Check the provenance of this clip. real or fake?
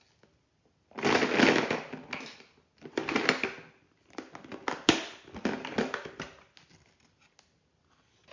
real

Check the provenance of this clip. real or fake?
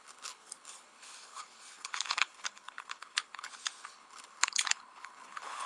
fake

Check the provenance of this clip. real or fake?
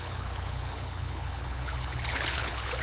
fake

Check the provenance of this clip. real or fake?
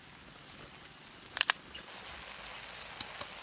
real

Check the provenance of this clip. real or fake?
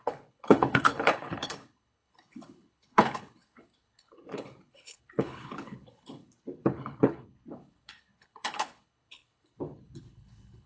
fake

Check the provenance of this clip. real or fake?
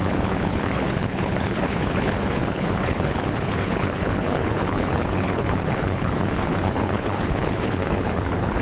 fake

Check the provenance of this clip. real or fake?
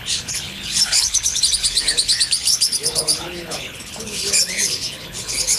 fake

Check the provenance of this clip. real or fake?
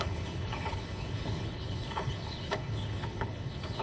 fake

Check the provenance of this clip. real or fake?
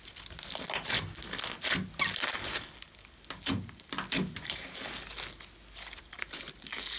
real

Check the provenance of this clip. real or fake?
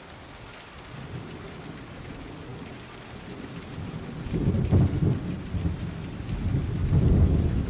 real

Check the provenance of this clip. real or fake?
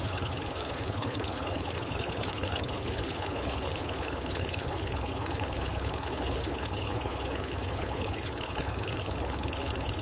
fake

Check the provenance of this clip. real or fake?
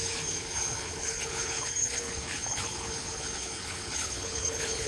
fake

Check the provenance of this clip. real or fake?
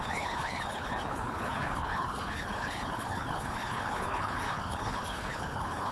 fake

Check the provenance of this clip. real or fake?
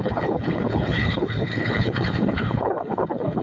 fake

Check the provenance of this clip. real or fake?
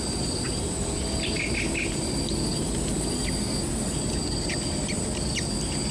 real